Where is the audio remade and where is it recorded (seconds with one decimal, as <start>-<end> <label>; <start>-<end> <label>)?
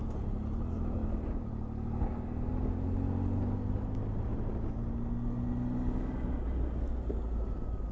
0.0-7.9 recorded